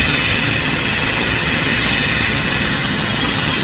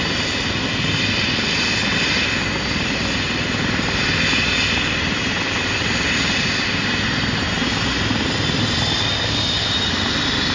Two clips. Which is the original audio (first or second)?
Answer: second